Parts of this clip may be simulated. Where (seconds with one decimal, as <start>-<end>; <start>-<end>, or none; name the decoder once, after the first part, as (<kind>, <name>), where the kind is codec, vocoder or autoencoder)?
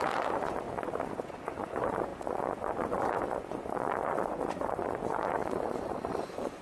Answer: 0.0-6.6 (vocoder, Vocos)